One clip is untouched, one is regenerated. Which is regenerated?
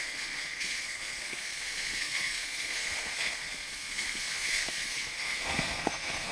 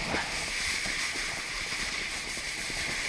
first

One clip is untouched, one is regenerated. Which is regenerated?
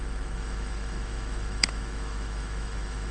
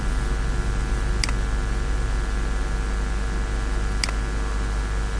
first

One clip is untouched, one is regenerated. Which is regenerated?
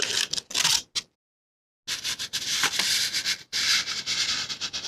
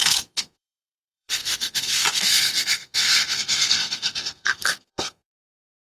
second